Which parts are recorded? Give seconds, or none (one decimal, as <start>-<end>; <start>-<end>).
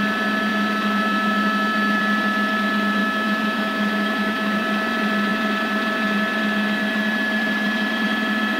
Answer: 0.0-0.5; 2.0-3.0; 4.6-8.6